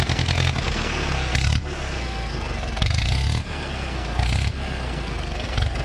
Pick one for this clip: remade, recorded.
remade